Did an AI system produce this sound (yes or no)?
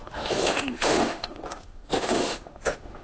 yes